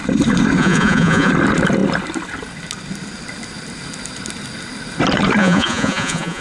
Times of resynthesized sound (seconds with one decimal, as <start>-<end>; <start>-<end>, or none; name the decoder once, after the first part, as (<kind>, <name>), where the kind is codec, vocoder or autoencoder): 0.6-1.3 (vocoder, Vocos); 5.4-6.4